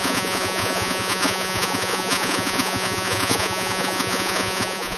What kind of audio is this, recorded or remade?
remade